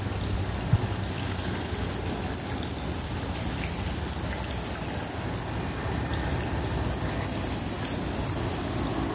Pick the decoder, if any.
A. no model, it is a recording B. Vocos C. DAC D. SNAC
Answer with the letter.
A